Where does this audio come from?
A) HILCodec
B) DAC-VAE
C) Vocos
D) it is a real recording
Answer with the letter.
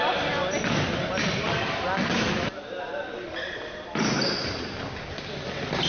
D